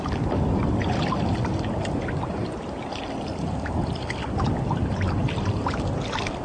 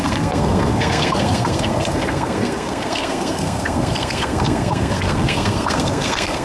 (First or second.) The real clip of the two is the first